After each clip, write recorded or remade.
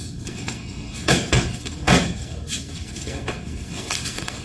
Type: remade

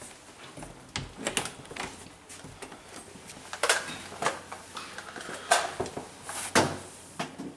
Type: recorded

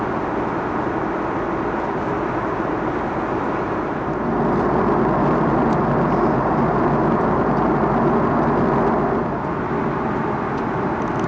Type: recorded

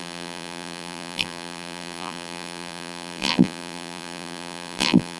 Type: remade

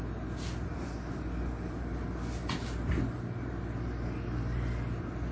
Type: recorded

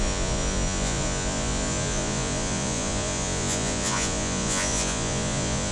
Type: remade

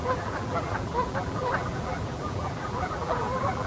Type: remade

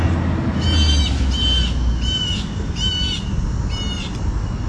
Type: recorded